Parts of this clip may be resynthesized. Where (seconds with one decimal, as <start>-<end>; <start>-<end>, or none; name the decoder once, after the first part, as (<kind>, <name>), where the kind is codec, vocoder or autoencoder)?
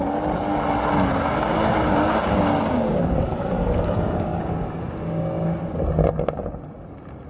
1.4-5.8 (codec, DAC)